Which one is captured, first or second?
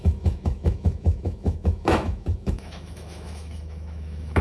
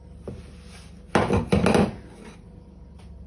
second